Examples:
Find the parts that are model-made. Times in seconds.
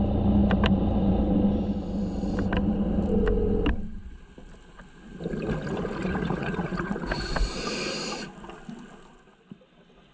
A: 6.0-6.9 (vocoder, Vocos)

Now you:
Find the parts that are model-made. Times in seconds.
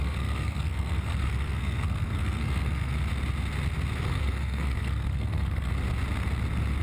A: 0.0-2.9 (codec, SNAC); 4.0-5.7